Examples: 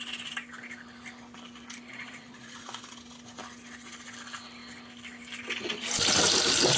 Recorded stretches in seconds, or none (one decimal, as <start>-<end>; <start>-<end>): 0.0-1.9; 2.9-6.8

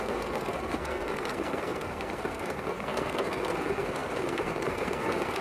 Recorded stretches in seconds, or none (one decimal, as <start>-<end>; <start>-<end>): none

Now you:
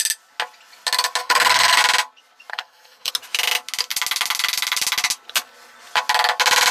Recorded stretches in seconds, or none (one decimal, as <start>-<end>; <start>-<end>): 0.0-1.2; 1.8-2.5; 3.1-6.7

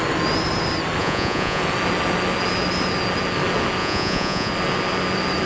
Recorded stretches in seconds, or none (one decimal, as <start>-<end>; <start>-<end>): 0.0-1.0; 1.6-3.8; 4.5-5.5